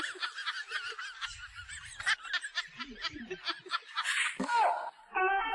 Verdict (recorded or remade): recorded